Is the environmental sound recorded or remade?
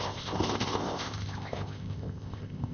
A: remade